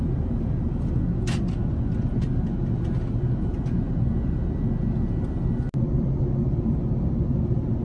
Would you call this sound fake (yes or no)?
no